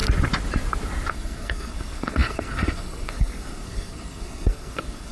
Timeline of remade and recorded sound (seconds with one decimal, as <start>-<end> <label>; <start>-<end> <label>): 0.0-1.1 recorded; 1.1-5.1 remade